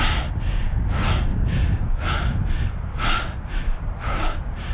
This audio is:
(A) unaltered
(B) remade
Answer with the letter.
A